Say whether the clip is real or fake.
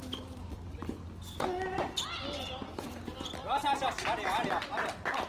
real